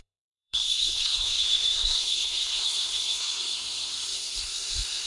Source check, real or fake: fake